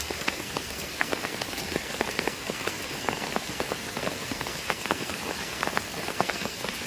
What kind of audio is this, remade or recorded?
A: remade